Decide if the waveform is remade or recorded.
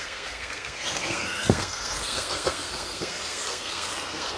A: remade